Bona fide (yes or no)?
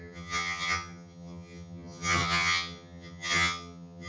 no